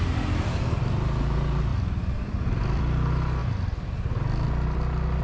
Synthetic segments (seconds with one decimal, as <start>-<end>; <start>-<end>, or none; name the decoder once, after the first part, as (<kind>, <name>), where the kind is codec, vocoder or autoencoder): 1.7-2.8 (vocoder, BigVGAN v2); 3.4-3.9